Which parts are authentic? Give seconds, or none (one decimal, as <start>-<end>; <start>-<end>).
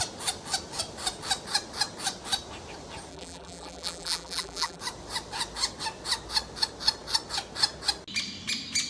0.0-3.1; 4.8-8.9